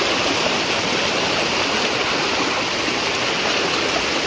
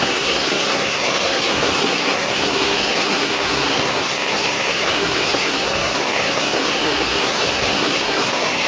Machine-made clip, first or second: second